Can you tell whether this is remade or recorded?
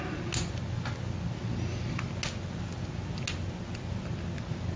recorded